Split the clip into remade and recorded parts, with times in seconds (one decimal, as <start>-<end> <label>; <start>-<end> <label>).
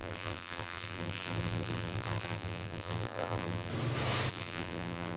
0.0-3.7 remade; 3.7-4.3 recorded; 4.3-5.2 remade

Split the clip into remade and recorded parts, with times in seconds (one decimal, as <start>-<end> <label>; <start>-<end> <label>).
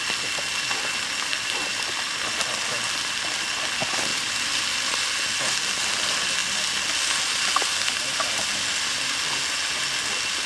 0.0-4.1 recorded; 4.1-4.6 remade; 4.6-10.5 recorded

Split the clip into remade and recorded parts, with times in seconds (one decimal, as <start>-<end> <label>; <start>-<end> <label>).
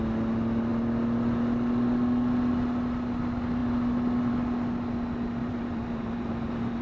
0.0-5.4 recorded; 5.4-6.8 remade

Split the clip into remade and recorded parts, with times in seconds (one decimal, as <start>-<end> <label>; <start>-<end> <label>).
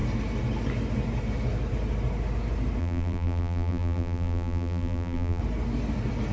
0.0-2.8 recorded; 2.8-5.4 remade; 5.4-6.3 recorded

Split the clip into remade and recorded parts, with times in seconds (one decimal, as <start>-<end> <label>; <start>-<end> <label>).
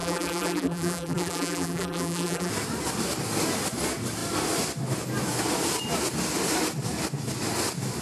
0.0-2.5 remade; 2.5-8.0 recorded